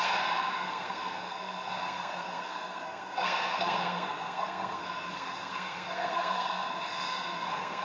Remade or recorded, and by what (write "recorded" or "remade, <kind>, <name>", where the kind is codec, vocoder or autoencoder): remade, codec, SNAC